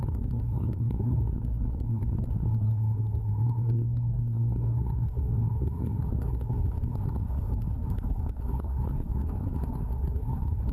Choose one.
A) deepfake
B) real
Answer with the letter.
A